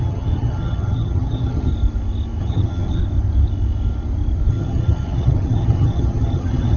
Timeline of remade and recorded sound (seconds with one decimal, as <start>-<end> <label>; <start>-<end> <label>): 0.0-1.7 remade; 1.7-2.4 recorded; 2.4-3.0 remade; 3.0-4.5 recorded; 4.5-6.8 remade